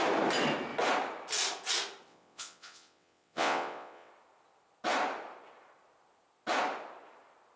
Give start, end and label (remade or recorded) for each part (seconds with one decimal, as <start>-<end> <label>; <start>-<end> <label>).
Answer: 0.0-2.1 recorded; 2.1-4.1 remade; 4.1-7.6 recorded